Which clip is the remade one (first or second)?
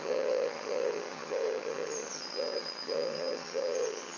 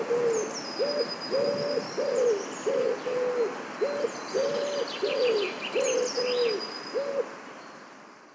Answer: first